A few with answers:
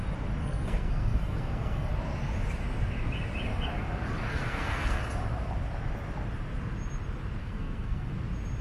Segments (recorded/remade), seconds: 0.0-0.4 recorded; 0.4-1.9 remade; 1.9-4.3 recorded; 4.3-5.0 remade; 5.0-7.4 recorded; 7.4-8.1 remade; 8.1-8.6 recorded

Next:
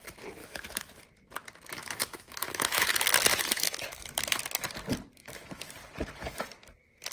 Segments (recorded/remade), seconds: 0.0-0.4 recorded; 0.4-1.0 remade; 1.0-1.8 recorded; 1.8-2.9 remade; 2.9-3.3 recorded; 3.3-4.0 remade; 4.0-5.2 recorded; 5.2-5.7 remade; 5.7-7.1 recorded

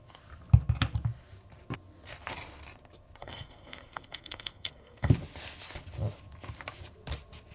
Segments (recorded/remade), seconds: 0.0-3.2 recorded; 3.2-5.1 remade; 5.1-7.5 recorded